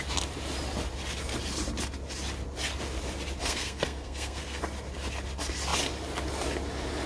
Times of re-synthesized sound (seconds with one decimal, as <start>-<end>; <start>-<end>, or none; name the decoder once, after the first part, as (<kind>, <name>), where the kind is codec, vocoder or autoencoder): 3.4-4.6 (codec, SNAC)